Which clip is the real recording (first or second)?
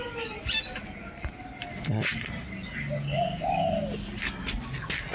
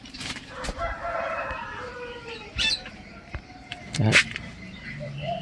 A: first